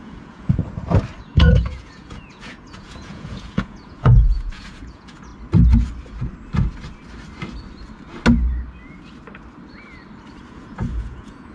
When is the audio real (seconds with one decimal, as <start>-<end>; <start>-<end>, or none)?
0.6-1.2; 5.3-10.5